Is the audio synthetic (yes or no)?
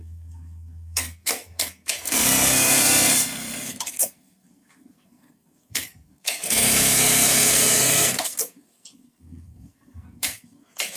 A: yes